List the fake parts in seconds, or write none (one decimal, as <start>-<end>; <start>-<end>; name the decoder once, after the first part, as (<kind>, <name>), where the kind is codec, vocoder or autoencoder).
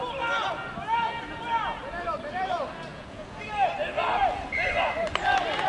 2.9-3.4 (vocoder, Vocos)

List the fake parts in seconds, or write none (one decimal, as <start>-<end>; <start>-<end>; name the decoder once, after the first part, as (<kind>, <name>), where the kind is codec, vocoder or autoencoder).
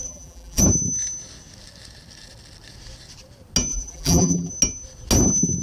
0.0-0.6 (vocoder, BigVGAN v2); 3.7-4.5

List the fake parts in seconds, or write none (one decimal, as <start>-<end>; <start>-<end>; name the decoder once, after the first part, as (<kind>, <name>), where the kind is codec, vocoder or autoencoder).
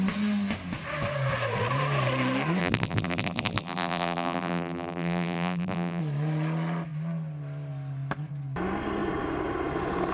2.6-6.0 (vocoder, BigVGAN v2)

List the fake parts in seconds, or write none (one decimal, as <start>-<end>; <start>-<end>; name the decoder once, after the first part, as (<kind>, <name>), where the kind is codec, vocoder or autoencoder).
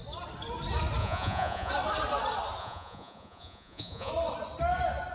1.0-1.7 (vocoder, Vocos); 2.6-4.1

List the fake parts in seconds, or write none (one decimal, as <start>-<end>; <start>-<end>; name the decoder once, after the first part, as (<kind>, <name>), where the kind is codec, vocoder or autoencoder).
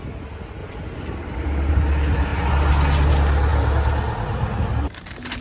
0.6-1.7 (vocoder, BigVGAN v2)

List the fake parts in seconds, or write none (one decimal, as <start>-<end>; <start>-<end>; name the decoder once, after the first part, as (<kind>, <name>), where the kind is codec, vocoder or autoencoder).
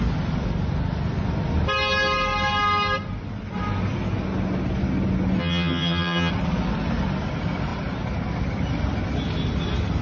5.4-6.3 (vocoder, HiFi-GAN)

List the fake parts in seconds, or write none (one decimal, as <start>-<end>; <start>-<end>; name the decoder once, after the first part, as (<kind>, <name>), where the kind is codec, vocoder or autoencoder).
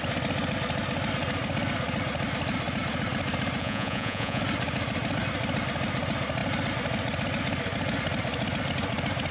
3.6-4.4 (vocoder, Vocos)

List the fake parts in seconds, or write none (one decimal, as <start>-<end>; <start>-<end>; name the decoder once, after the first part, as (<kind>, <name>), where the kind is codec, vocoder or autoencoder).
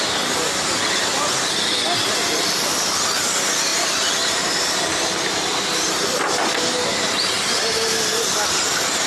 3.7-5.3 (vocoder, BigVGAN v2)